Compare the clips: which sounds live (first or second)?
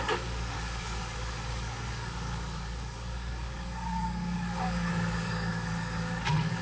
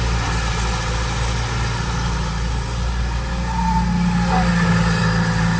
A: second